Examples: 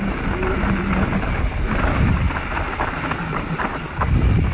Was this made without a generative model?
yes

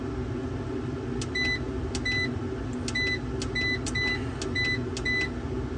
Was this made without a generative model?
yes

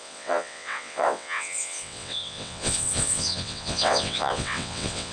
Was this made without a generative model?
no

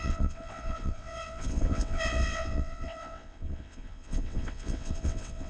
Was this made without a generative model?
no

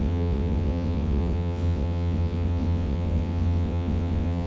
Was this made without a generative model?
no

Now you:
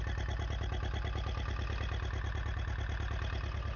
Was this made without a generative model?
yes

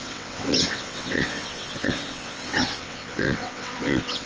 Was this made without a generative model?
no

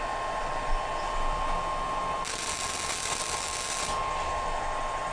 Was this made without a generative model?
yes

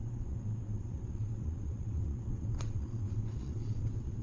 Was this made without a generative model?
no